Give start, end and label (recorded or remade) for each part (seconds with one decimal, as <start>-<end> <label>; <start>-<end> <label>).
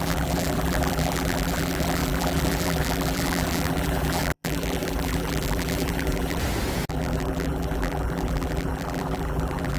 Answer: 0.0-6.4 remade; 6.4-6.9 recorded; 6.9-9.8 remade